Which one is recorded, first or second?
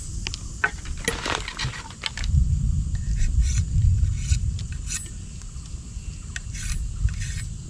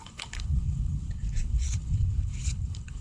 first